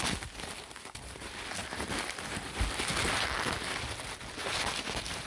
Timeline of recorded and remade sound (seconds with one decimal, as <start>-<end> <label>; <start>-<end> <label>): 0.0-5.3 recorded